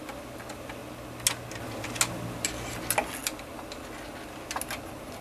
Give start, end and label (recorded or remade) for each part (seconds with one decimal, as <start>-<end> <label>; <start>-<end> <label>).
0.0-5.2 recorded